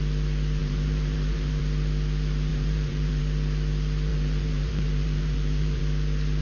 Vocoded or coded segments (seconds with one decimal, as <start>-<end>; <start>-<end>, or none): 0.6-1.6; 2.5-3.2; 4.1-5.8